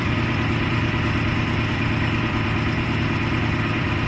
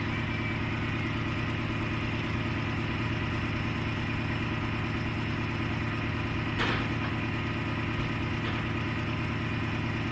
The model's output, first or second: first